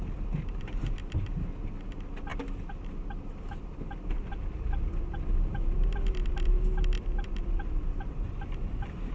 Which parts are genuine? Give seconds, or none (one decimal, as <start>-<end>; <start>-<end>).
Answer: 2.3-3.6